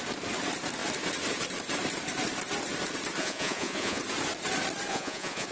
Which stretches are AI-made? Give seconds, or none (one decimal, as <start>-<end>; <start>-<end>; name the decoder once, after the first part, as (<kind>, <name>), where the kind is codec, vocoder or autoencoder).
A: 3.2-4.0 (vocoder, Vocos); 4.9-5.5

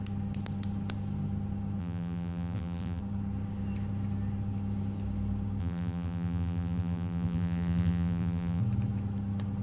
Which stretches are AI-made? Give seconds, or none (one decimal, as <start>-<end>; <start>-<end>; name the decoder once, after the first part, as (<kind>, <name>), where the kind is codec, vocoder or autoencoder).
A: 1.8-3.0 (vocoder, BigVGAN v2); 5.6-8.6

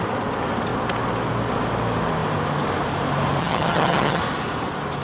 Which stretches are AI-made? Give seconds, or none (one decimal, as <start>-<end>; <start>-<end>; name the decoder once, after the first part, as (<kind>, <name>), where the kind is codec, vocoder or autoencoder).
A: 3.4-4.2 (vocoder, HiFi-GAN)

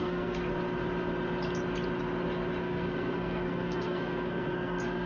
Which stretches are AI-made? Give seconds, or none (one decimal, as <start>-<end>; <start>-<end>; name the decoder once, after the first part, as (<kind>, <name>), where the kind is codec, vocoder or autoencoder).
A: 0.0-0.4 (codec, SNAC); 2.6-5.1

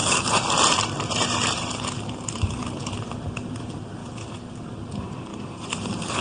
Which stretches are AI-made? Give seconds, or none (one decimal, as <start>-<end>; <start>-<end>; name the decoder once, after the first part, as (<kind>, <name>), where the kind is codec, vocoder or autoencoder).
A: 4.0-4.7 (vocoder, BigVGAN v2); 5.3-6.2

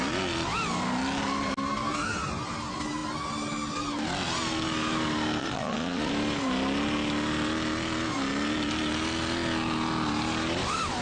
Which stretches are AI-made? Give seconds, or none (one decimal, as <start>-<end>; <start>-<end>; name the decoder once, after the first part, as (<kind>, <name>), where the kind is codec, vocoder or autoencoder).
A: 5.4-6.1 (vocoder, Vocos)

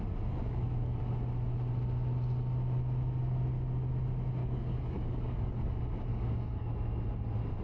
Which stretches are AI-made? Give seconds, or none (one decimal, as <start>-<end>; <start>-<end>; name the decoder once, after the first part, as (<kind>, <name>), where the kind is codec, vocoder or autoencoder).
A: 0.4-1.0 (codec, DAC); 4.4-5.5; 6.1-6.7